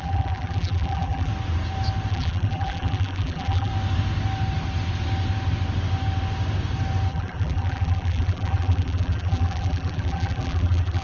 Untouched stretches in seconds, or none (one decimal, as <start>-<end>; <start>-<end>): 1.3-2.1; 3.7-7.1